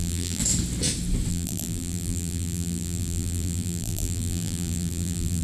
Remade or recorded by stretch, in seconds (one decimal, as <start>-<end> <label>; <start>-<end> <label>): 0.0-0.4 remade; 0.4-1.3 recorded; 1.3-5.4 remade